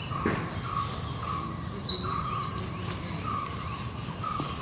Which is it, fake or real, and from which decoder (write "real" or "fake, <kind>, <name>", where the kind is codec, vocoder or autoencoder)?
real